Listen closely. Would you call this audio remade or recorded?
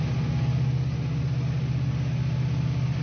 recorded